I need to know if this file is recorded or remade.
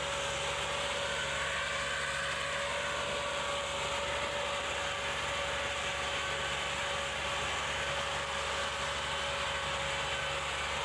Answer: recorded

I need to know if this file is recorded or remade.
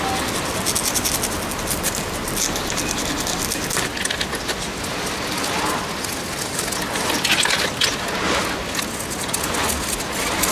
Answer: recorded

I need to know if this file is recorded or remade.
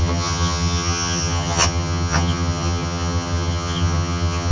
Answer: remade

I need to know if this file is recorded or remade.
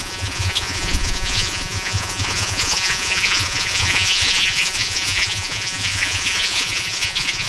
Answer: remade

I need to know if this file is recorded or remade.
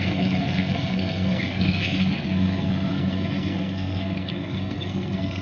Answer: remade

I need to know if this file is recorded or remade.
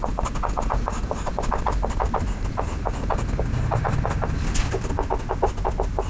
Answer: recorded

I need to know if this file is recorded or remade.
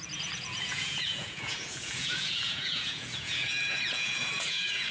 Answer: remade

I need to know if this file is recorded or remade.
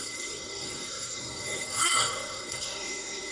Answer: remade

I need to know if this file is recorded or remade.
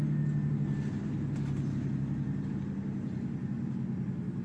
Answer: recorded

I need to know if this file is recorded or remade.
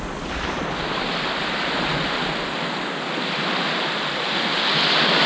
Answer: recorded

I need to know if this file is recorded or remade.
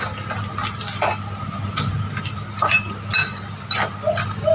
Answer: recorded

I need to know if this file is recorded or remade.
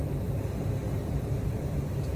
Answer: remade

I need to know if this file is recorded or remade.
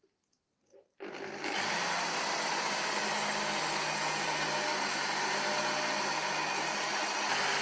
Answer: recorded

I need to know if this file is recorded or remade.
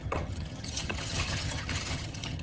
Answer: remade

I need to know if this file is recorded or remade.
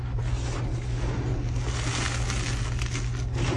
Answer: recorded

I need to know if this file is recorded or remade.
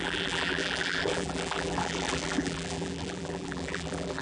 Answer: remade